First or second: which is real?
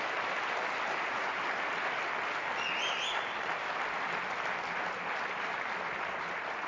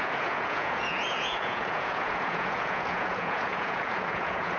first